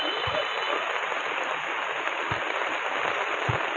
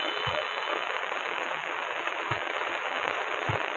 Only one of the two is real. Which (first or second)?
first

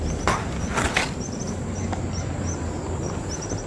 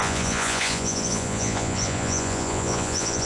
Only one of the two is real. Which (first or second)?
first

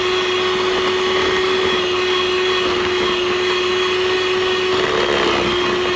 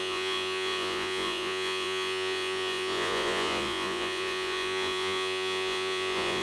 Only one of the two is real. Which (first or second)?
first